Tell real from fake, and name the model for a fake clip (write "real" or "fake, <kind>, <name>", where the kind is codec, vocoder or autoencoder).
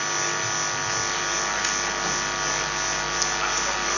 real